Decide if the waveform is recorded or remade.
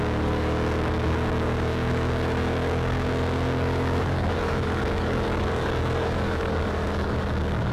remade